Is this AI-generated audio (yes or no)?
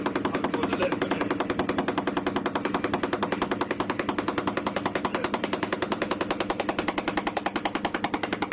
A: no